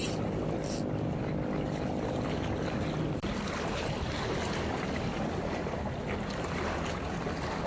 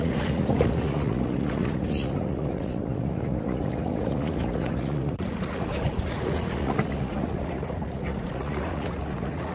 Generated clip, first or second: second